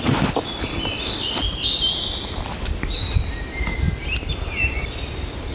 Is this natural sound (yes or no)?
yes